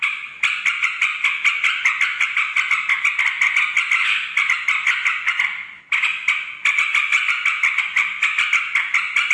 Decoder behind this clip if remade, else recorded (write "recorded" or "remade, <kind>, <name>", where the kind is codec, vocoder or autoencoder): recorded